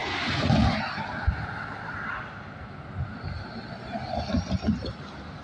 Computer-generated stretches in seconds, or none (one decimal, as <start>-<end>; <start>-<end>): none